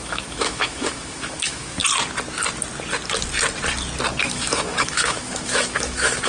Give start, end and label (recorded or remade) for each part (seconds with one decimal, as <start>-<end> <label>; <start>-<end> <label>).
0.0-1.8 remade; 1.8-4.2 recorded; 4.2-6.3 remade